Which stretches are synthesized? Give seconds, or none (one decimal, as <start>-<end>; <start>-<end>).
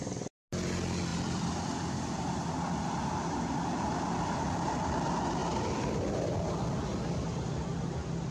1.1-4.2; 5.4-6.6